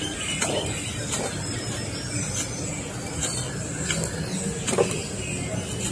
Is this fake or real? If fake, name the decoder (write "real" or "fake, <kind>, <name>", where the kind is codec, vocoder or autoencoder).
real